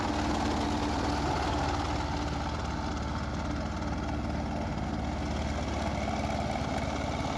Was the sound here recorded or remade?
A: recorded